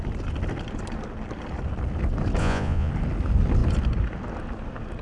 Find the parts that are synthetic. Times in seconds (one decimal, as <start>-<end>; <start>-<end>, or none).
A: 2.4-2.9